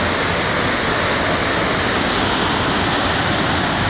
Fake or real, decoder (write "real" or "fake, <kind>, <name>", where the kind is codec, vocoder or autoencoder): real